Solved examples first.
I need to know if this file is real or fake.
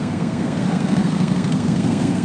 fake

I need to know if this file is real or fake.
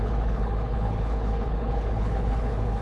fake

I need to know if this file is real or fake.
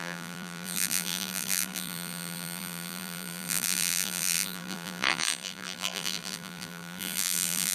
fake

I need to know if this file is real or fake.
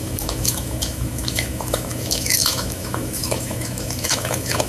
fake